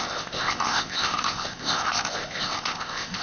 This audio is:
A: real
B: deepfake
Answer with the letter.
B